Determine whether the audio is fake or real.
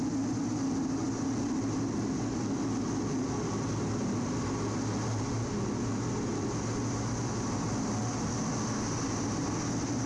real